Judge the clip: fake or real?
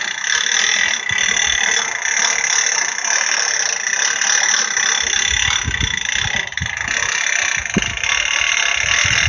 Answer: real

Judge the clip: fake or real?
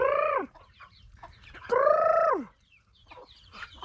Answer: fake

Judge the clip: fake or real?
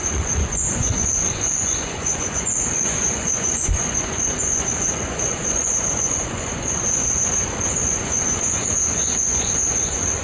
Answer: fake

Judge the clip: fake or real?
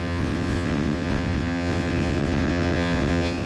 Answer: fake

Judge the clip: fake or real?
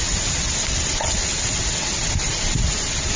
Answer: real